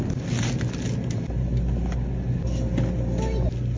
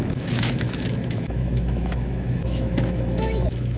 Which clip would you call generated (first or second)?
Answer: second